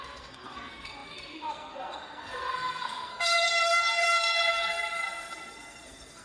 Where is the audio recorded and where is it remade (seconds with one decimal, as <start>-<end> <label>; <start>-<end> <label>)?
0.0-6.2 remade